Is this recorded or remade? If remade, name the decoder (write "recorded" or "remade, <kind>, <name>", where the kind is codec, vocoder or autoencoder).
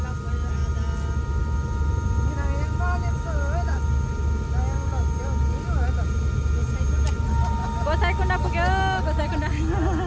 recorded